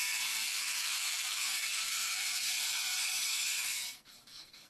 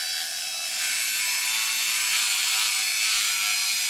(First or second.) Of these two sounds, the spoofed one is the first